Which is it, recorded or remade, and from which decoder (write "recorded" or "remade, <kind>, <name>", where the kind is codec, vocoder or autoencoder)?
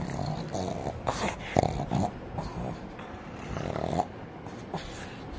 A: recorded